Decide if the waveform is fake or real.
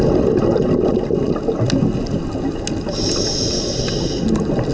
real